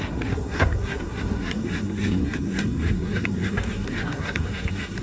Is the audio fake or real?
fake